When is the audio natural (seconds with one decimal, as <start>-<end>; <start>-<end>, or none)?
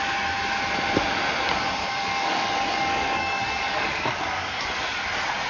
0.0-1.8; 4.6-5.5